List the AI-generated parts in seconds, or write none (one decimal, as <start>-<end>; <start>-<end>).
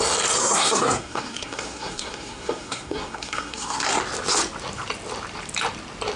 0.4-4.0